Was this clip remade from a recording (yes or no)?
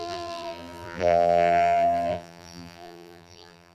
yes